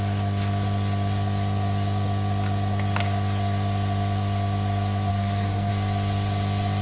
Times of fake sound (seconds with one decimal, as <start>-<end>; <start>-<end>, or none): 5.1-5.7